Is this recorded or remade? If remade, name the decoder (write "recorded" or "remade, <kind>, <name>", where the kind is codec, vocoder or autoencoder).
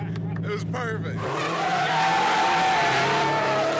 recorded